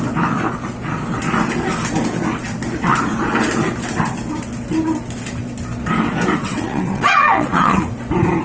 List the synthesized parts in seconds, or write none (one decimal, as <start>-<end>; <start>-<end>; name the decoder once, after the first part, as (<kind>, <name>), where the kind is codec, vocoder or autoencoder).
6.4-7.8 (vocoder, WaveNeXt)